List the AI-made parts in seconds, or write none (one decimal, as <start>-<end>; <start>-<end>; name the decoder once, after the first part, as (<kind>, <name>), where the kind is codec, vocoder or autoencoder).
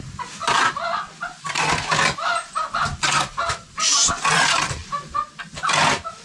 none